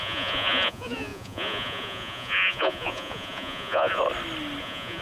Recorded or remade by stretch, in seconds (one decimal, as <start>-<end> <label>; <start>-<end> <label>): 0.0-4.0 remade; 4.0-4.6 recorded; 4.6-5.0 remade